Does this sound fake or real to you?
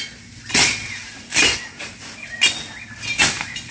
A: real